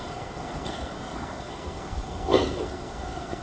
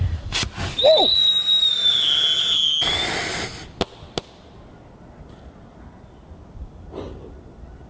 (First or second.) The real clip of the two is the second